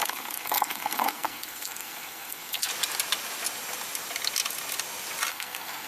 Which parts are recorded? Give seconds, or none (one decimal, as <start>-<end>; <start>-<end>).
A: 2.7-5.3